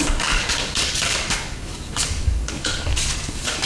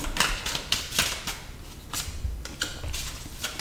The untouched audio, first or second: second